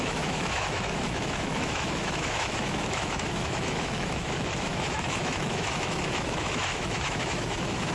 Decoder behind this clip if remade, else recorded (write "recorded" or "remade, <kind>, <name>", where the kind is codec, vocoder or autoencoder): remade, autoencoder, DAC-VAE